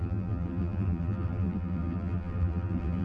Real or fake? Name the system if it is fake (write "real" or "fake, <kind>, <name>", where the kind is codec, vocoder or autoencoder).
fake, vocoder, BigVGAN v2